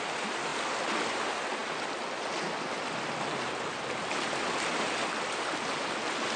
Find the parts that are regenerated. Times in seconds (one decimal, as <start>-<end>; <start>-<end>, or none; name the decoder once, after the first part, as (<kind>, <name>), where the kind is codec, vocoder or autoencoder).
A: none